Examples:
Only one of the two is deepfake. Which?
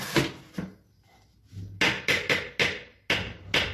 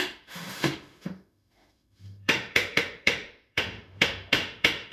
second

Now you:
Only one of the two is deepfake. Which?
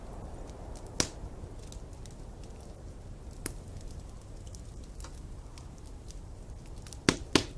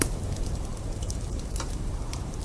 second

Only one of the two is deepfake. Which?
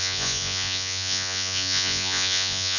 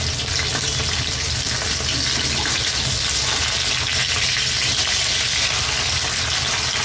first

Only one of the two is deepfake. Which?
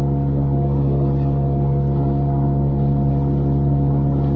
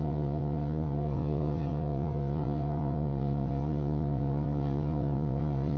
second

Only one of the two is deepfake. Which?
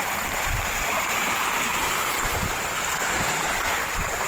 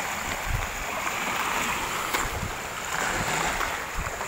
first